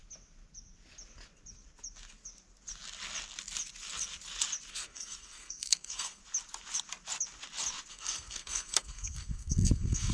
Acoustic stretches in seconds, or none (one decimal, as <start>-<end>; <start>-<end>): 0.0-4.7; 6.2-7.9